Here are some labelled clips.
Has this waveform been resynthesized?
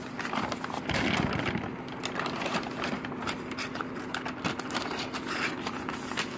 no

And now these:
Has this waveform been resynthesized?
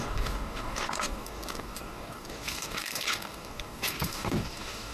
yes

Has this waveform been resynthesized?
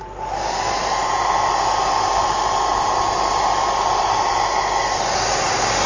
no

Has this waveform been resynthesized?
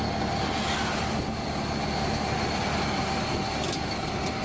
no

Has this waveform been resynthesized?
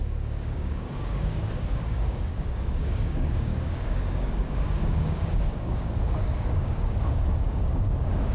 yes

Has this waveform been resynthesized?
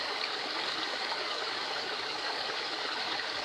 yes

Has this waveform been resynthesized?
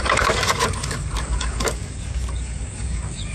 yes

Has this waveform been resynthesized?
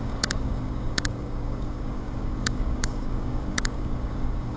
yes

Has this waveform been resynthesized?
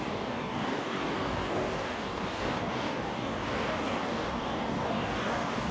yes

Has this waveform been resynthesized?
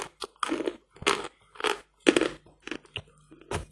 no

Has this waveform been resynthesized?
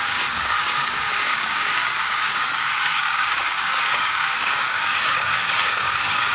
yes